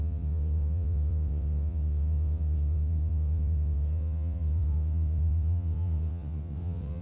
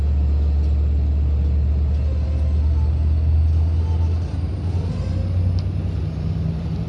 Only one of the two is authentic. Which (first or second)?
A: second